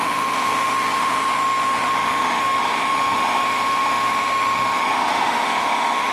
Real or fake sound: fake